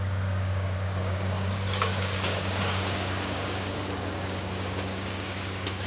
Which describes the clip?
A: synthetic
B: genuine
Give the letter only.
A